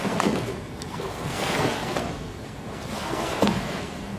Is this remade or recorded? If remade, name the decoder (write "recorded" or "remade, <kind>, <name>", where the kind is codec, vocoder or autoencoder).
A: remade, codec, SNAC